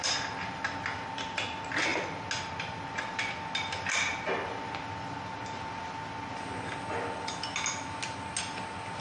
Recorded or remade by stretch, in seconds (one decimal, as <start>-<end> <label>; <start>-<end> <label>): 0.0-9.0 recorded